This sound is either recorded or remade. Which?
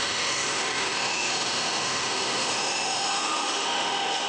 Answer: remade